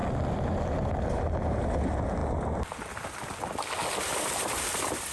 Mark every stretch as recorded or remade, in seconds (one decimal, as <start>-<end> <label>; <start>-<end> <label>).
0.0-1.7 remade; 1.7-4.1 recorded; 4.1-4.6 remade; 4.6-5.1 recorded